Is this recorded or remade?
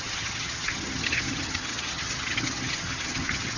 remade